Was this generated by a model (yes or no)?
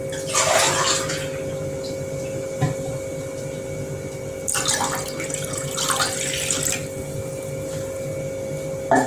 no